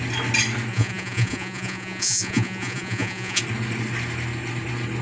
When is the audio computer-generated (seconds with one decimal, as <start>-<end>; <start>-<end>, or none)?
0.7-3.4